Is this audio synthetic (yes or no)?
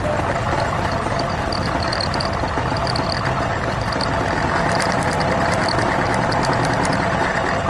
no